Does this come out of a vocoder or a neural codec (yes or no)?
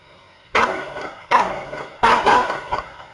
yes